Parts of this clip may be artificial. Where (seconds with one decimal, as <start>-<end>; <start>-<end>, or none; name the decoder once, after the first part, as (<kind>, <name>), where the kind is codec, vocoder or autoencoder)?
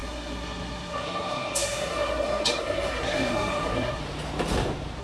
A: 0.0-4.0 (codec, SNAC)